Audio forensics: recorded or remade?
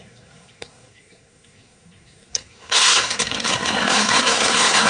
remade